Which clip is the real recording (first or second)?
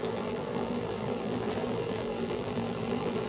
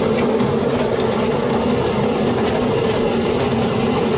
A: second